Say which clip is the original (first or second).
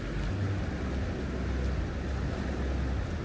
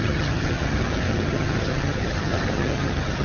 first